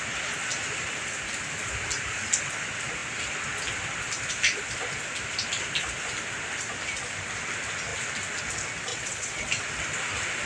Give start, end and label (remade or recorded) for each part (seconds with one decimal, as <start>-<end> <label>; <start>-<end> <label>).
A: 0.0-8.9 recorded; 8.9-9.5 remade; 9.5-10.5 recorded

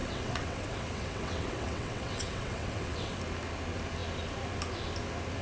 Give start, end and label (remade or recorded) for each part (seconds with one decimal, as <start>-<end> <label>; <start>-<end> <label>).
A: 0.0-3.2 remade; 3.2-5.4 recorded

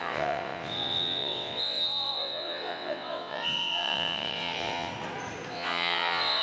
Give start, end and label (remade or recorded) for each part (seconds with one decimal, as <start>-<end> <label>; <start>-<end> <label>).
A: 0.0-4.9 remade; 4.9-5.5 recorded; 5.5-6.4 remade

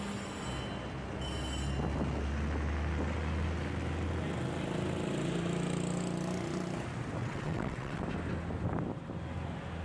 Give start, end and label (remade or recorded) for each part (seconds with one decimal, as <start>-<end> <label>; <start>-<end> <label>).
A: 0.0-7.2 recorded; 7.2-8.0 remade; 8.0-9.8 recorded

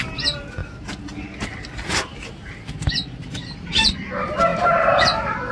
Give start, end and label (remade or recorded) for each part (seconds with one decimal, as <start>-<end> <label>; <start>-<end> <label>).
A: 0.0-5.5 recorded

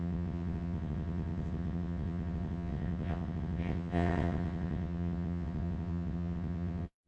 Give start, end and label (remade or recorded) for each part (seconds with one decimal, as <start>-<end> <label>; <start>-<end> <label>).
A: 0.0-7.1 remade

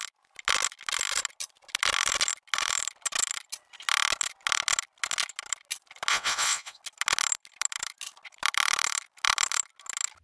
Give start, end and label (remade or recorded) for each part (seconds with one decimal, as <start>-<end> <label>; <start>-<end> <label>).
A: 0.0-6.1 recorded; 6.1-6.8 remade; 6.8-10.2 recorded